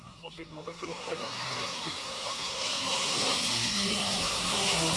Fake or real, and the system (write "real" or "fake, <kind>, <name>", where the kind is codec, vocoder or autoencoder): fake, codec, SNAC